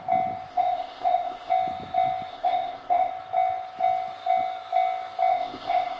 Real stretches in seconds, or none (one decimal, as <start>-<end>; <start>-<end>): 0.0-0.5; 1.5-2.3; 3.1-5.3